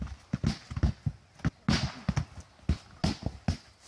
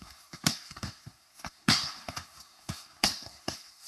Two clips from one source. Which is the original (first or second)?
first